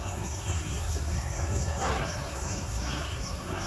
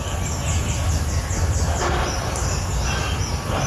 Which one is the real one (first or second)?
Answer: second